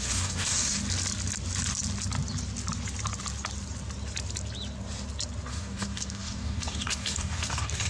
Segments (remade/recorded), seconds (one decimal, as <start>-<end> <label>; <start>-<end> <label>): 0.0-0.8 remade; 0.8-5.5 recorded; 5.5-7.9 remade